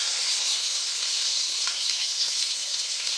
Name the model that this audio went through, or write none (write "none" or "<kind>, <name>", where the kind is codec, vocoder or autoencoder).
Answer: codec, SNAC